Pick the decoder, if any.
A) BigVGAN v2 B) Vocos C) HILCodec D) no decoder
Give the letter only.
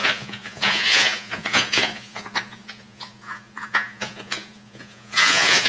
B